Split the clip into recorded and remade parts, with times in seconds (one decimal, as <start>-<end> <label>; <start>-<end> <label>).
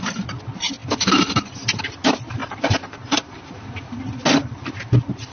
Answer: 0.0-2.4 recorded; 2.4-4.0 remade; 4.0-5.3 recorded